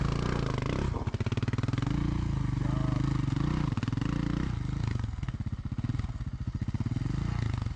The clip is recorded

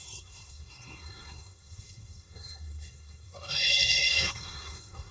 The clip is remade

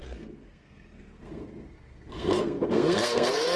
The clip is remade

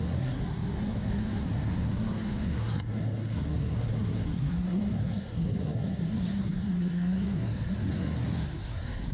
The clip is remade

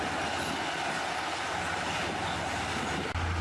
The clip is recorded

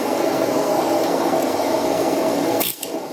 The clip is remade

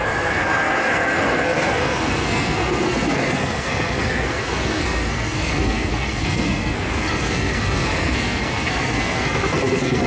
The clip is remade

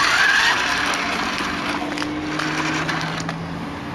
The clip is recorded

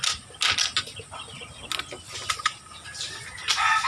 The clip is recorded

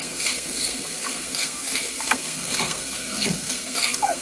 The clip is remade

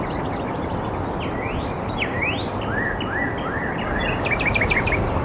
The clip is recorded